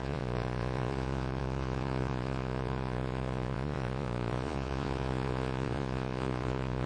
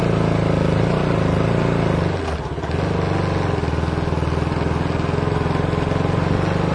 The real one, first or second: second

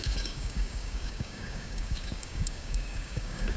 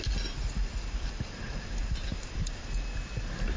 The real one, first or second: second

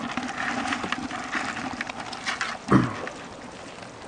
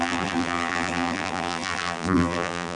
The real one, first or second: first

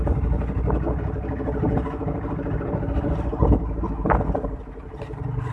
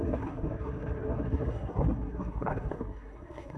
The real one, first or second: first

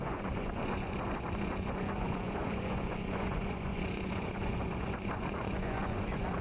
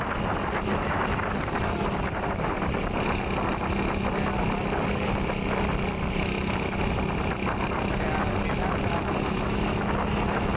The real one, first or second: second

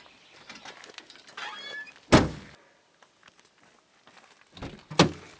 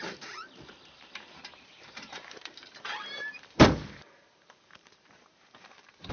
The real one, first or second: first